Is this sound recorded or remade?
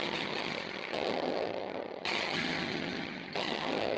remade